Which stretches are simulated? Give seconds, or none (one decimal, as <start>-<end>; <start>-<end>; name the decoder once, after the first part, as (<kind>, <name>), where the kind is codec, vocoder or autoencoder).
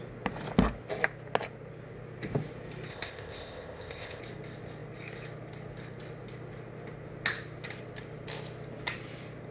2.9-4.2 (codec, ZipCodec)